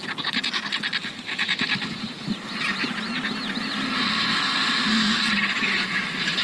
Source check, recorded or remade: recorded